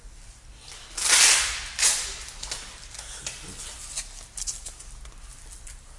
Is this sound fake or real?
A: real